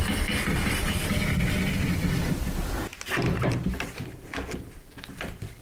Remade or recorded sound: recorded